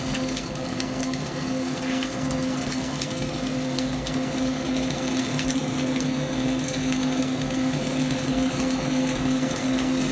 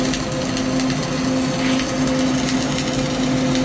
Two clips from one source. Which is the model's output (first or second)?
first